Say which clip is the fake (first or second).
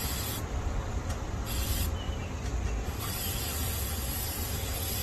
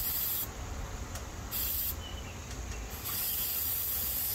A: first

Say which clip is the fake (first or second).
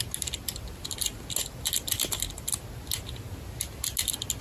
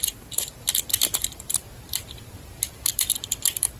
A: second